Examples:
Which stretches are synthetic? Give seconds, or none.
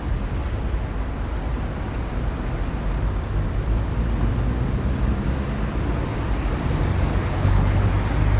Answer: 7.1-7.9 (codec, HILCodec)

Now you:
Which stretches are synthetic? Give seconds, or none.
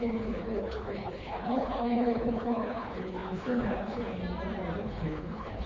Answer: 0.0-4.2 (codec, HILCodec); 4.8-5.7